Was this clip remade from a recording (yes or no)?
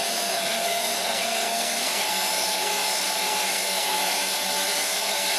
yes